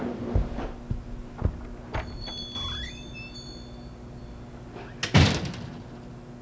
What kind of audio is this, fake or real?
real